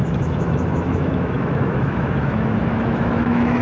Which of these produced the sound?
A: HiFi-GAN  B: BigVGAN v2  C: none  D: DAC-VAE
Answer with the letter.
D